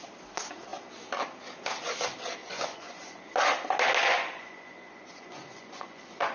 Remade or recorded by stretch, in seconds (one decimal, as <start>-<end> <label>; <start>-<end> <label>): 0.0-2.4 recorded; 2.4-3.2 remade; 3.2-4.1 recorded; 4.1-6.3 remade